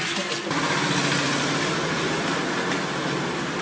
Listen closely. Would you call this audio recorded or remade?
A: recorded